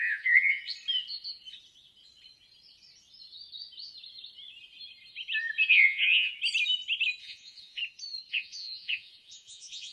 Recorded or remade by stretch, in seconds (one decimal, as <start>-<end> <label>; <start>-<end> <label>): 0.0-0.6 remade; 0.6-5.7 recorded; 5.7-6.3 remade; 6.3-7.2 recorded; 7.2-7.8 remade; 7.8-8.3 recorded; 8.3-9.9 remade